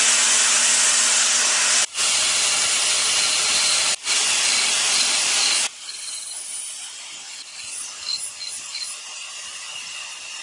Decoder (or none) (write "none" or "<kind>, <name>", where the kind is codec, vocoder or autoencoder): none